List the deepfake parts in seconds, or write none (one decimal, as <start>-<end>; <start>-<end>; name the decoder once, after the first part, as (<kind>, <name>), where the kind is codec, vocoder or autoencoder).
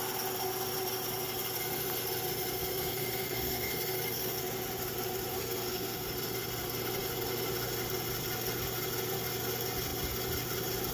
2.7-4.4 (codec, SNAC); 5.3-6.1